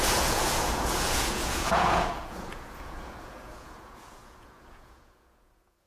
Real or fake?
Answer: fake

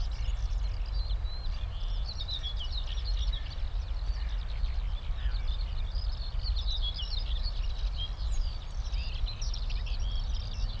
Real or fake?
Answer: real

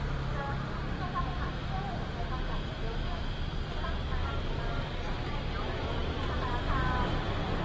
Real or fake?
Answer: real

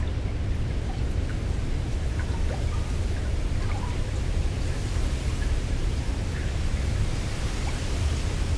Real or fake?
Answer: real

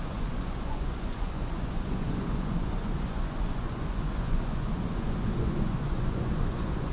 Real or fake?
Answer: fake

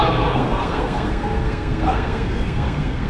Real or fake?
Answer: fake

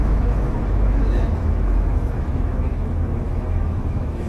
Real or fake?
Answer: fake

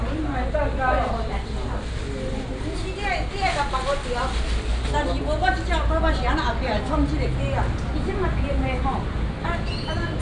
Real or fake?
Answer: real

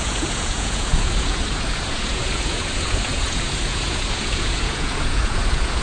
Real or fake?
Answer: fake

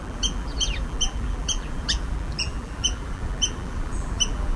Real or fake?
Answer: fake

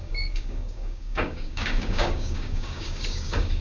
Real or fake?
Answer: fake